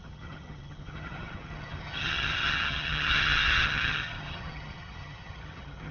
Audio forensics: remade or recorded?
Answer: remade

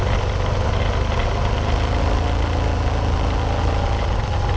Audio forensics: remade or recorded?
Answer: recorded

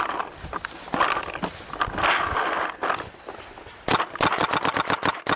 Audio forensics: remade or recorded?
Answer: recorded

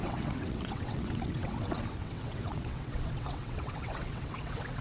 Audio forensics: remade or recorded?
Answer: remade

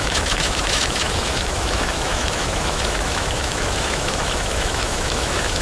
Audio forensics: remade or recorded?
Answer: remade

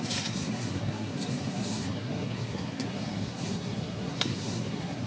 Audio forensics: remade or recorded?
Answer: remade